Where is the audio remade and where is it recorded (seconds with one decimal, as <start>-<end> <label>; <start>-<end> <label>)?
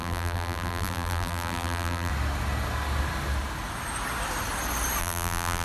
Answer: 0.0-2.1 remade; 2.1-5.0 recorded; 5.0-5.6 remade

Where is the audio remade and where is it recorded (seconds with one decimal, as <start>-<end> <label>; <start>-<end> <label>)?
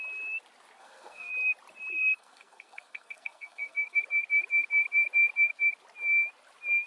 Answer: 0.0-0.8 recorded; 0.8-1.3 remade; 1.3-1.9 recorded; 1.9-4.0 remade; 4.0-6.9 recorded